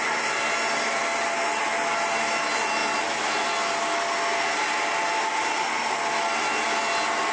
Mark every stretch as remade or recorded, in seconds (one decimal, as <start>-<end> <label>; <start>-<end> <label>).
0.0-7.3 recorded

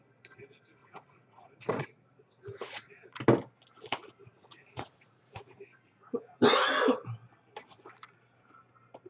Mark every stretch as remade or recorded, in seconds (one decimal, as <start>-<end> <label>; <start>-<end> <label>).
0.0-0.8 recorded; 0.8-3.2 remade; 3.2-4.2 recorded; 4.2-6.7 remade; 6.7-9.1 recorded

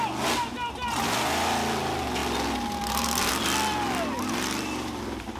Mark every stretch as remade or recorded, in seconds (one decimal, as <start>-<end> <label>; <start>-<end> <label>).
0.0-5.4 recorded

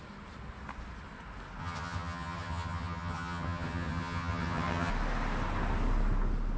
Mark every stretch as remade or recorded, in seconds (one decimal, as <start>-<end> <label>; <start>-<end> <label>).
0.0-1.6 recorded; 1.6-4.9 remade; 4.9-6.6 recorded

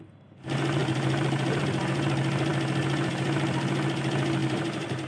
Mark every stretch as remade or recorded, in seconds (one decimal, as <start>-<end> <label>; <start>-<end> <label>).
0.0-0.8 recorded; 0.8-1.6 remade; 1.6-4.4 recorded; 4.4-5.1 remade

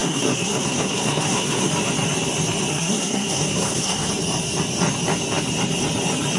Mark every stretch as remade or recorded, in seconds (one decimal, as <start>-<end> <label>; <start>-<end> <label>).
0.0-1.7 remade; 1.7-2.7 recorded; 2.7-4.1 remade; 4.1-6.4 recorded

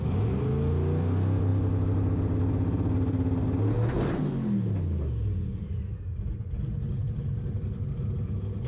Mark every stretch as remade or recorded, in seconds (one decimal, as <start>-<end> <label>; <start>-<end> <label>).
0.0-8.7 recorded